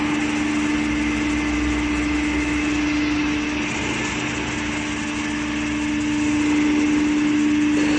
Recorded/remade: recorded